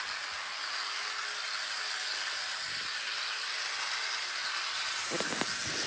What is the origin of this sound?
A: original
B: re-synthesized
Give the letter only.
A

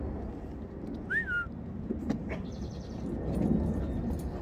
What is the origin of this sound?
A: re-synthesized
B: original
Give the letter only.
B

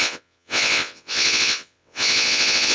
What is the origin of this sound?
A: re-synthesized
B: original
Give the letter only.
A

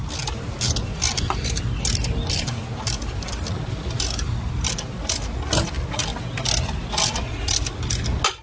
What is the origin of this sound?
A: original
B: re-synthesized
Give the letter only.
A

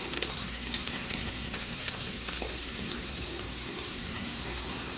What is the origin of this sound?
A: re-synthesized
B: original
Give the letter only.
A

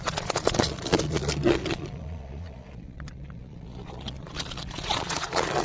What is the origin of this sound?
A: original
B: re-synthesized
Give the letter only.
B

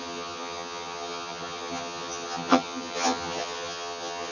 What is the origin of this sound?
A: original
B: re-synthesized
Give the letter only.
B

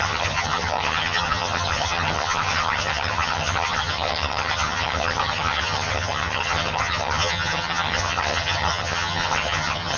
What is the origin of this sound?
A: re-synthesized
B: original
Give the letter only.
A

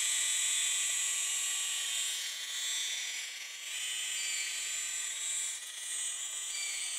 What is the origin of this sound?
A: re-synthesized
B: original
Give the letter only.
A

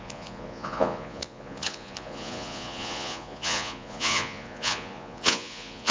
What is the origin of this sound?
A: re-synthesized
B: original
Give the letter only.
A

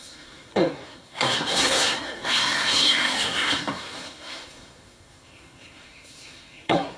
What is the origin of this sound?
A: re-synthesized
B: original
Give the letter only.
A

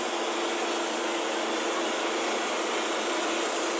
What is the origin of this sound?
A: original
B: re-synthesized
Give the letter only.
A